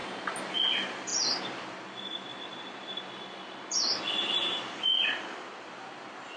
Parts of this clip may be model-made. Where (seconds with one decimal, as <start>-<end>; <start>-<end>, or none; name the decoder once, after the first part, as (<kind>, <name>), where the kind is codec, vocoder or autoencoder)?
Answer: 0.5-1.1 (vocoder, BigVGAN v2); 1.6-2.3; 3.8-6.4